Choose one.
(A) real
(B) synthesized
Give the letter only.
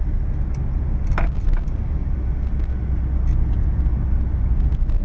A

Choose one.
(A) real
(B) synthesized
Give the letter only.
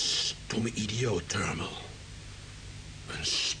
A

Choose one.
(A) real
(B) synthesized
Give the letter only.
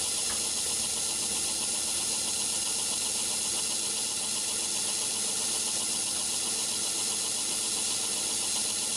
A